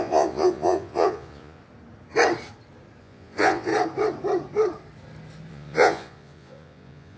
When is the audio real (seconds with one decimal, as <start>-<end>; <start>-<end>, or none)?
1.6-3.0; 3.7-5.5